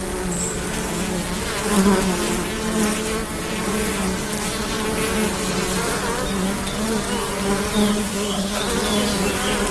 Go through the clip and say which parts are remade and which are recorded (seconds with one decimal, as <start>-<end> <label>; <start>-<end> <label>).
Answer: 0.0-8.0 recorded; 8.0-8.6 remade; 8.6-9.7 recorded